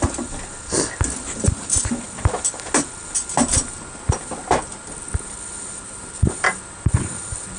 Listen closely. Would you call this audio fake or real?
real